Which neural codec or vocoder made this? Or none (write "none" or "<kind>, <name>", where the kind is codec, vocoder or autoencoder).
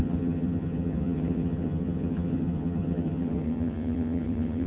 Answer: vocoder, HiFi-GAN